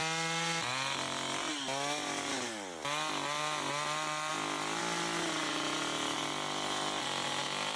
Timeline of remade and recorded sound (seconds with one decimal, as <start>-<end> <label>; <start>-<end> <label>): 0.0-7.8 recorded